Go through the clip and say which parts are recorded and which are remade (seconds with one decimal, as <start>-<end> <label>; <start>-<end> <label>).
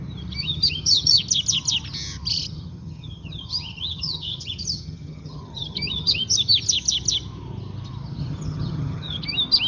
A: 0.0-0.4 recorded; 0.4-1.2 remade; 1.2-2.3 recorded; 2.3-6.2 remade; 6.2-8.2 recorded; 8.2-9.2 remade; 9.2-9.7 recorded